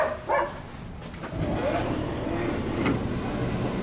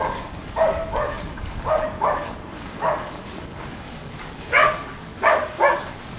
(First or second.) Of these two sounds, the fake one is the second